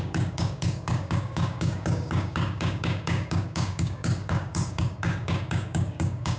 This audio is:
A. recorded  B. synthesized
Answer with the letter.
B